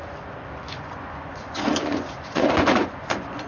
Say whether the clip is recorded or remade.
remade